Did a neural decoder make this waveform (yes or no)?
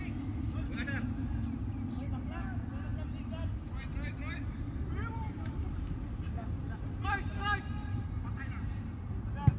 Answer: no